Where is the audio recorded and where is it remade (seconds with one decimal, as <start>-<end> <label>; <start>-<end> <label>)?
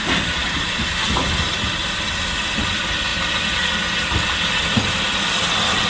0.0-5.9 recorded